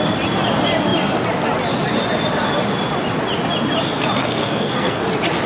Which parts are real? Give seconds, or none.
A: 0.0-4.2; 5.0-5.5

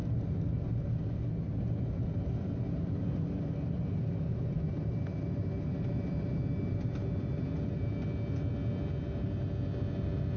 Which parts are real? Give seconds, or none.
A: 0.0-10.4

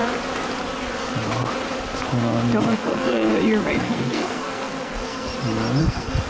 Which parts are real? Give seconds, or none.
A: 0.0-2.6; 3.3-3.8; 5.3-5.8

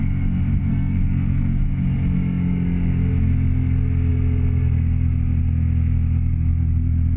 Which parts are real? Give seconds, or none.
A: 0.0-0.7; 1.6-7.2

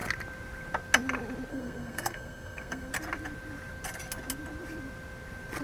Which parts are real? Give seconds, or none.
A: 0.0-1.5; 2.9-5.6

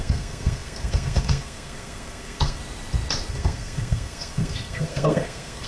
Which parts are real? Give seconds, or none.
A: 2.6-3.3

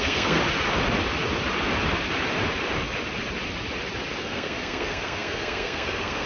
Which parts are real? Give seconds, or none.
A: 0.4-4.2

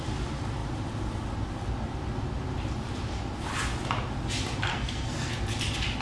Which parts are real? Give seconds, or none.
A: 0.0-4.7; 5.3-6.0